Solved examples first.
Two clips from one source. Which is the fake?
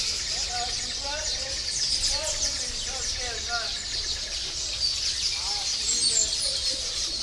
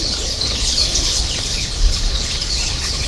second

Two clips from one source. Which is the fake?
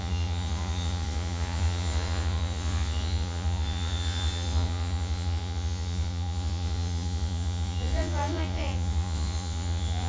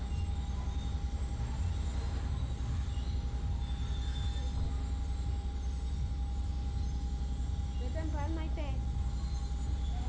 first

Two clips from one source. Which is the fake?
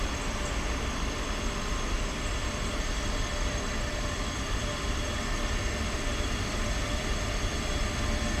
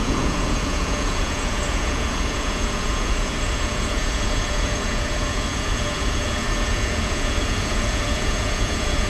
second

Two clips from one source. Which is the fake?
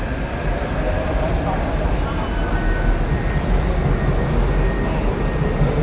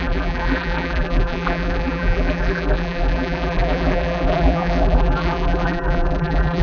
second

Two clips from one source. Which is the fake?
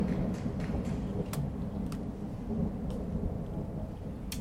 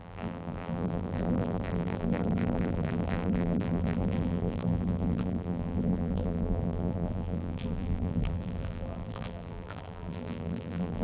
second